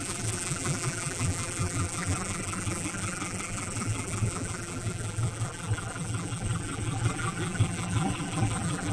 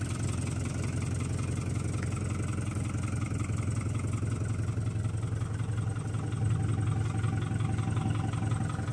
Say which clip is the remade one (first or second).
first